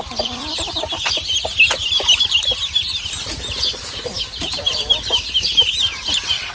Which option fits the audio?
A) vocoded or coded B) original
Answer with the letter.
B